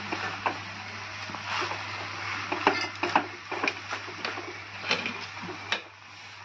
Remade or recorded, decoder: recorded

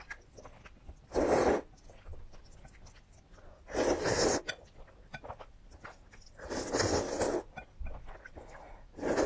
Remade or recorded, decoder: recorded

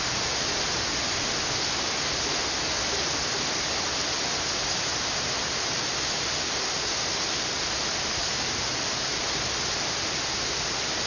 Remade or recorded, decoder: recorded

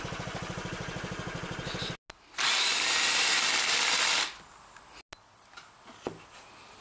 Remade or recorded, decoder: recorded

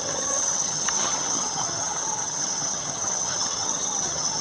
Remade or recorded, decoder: remade, vocoder, HiFi-GAN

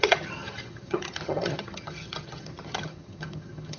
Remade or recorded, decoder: remade, vocoder, HiFi-GAN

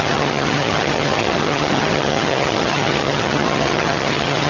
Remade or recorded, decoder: remade, vocoder, HiFi-GAN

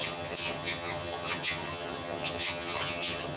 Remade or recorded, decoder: remade, vocoder, HiFi-GAN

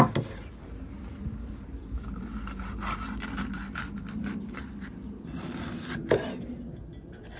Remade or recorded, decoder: recorded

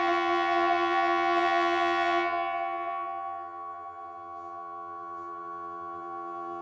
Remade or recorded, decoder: remade, vocoder, HiFi-GAN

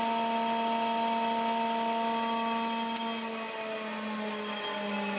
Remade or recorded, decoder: recorded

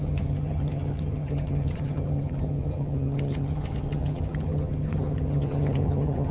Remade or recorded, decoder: remade, vocoder, HiFi-GAN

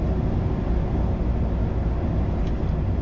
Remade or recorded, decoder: recorded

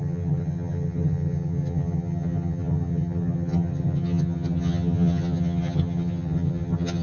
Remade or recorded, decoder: remade, vocoder, HiFi-GAN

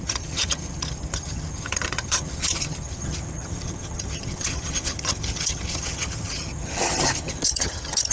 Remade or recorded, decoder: remade, vocoder, HiFi-GAN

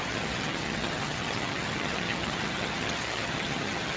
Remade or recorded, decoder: remade, vocoder, HiFi-GAN